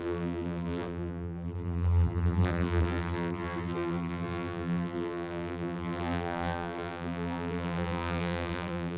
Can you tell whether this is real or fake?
fake